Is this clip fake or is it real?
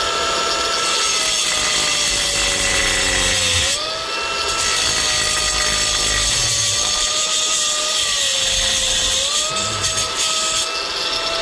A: real